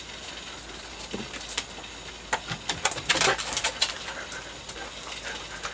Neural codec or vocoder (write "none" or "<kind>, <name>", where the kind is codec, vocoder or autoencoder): none